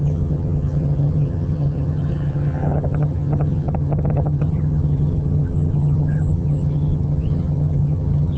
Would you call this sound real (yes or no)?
no